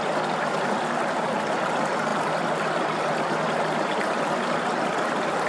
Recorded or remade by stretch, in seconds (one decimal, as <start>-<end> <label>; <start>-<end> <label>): 0.0-5.5 recorded